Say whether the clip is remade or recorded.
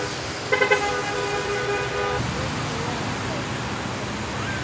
recorded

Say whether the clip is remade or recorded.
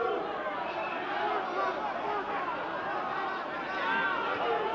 recorded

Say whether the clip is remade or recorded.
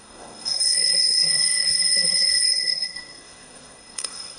remade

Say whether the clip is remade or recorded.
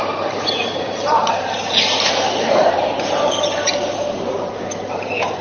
remade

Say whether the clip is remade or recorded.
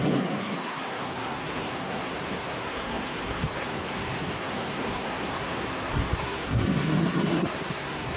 remade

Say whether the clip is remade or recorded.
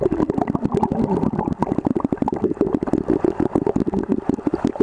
recorded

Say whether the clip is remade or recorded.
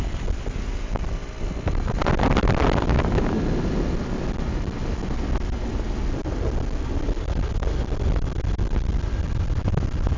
recorded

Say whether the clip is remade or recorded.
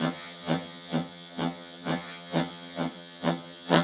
remade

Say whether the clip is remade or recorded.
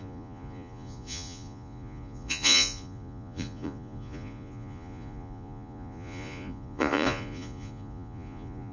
remade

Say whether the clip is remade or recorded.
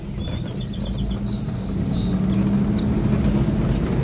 recorded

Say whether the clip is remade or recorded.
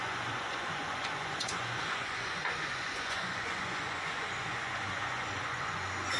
remade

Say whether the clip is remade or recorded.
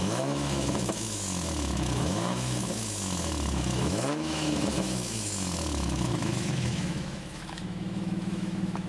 remade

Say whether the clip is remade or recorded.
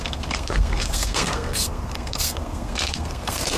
remade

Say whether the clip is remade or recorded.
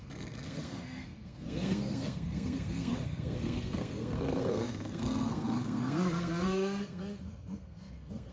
remade